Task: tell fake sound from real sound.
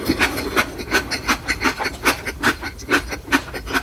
real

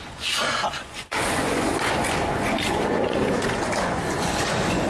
fake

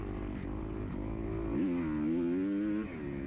real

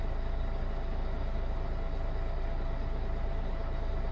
real